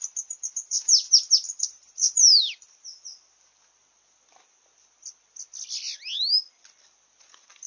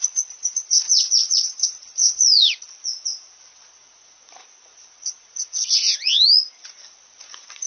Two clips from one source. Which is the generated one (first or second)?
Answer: second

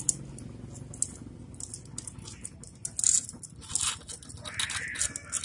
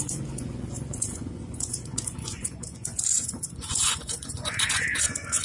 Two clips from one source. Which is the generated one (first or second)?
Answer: second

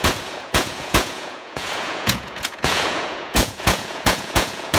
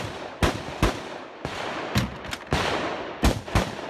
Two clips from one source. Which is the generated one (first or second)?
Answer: first